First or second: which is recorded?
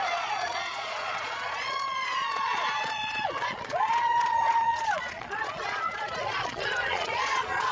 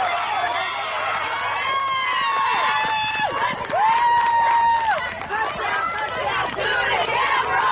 second